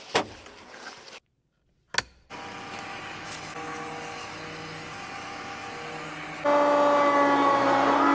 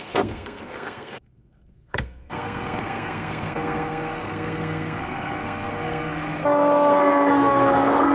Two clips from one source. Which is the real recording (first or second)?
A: first